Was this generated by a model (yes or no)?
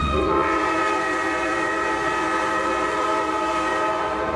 yes